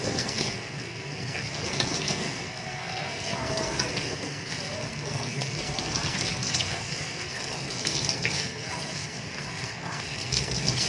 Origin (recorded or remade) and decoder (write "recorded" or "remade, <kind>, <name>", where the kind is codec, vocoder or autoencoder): remade, codec, SNAC